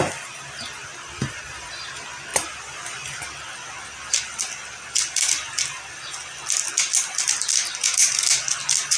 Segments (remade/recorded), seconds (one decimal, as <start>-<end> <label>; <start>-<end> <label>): 0.0-2.3 recorded; 2.3-3.2 remade; 3.2-9.0 recorded